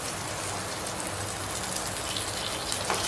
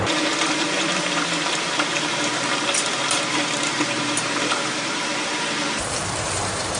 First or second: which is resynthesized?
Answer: second